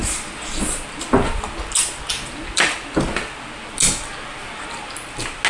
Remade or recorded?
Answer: recorded